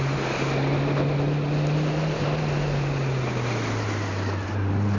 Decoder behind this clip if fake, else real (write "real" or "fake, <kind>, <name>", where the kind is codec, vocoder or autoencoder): real